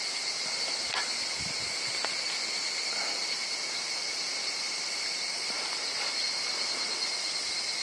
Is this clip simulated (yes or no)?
no